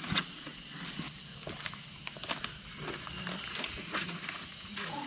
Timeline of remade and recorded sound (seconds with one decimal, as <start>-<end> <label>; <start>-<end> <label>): 0.0-0.5 remade; 0.5-3.6 recorded; 3.6-5.1 remade